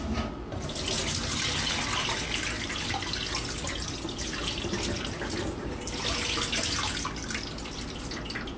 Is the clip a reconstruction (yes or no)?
no